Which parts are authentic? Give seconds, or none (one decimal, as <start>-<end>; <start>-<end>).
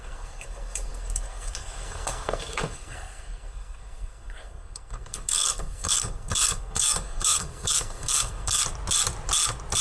8.6-9.8